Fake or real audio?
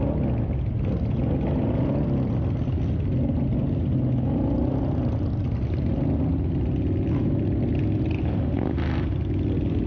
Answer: real